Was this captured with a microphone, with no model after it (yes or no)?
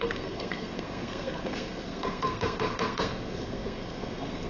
no